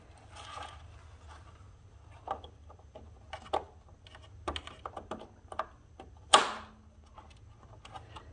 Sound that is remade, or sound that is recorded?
recorded